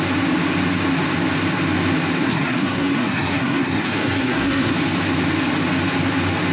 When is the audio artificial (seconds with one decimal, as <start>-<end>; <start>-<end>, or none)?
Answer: 2.2-4.7